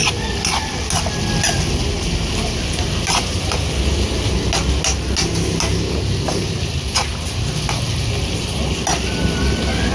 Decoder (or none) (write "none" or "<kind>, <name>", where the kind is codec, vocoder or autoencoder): none